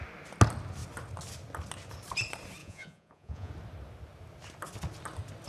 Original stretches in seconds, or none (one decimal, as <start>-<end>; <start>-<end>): 0.0-2.6; 3.5-5.5